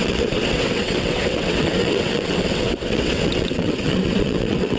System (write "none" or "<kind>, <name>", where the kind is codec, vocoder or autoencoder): vocoder, WaveNeXt